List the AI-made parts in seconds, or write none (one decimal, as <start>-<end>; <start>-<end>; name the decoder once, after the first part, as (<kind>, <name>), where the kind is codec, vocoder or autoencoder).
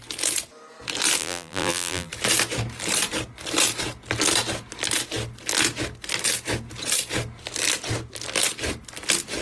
1.2-2.1 (vocoder, BigVGAN v2)